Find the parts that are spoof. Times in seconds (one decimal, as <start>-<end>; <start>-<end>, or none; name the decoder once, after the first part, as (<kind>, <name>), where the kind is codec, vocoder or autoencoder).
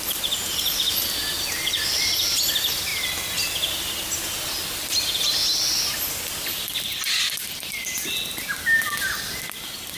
none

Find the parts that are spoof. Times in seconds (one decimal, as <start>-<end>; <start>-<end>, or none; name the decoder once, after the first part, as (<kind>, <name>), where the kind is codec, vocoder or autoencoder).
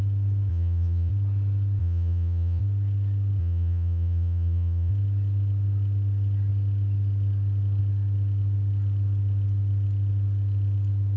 0.5-1.1 (vocoder, Vocos); 1.8-2.6; 3.4-4.9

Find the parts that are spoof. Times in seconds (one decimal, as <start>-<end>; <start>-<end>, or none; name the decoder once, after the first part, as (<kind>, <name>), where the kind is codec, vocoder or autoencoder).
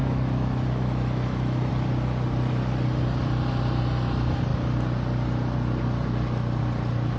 0.0-1.7 (autoencoder, DAC-VAE)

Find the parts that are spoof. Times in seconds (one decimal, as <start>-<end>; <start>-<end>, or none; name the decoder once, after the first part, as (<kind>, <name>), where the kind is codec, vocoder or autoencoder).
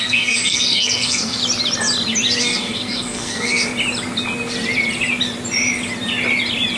0.0-1.4 (codec, SNAC); 2.4-3.7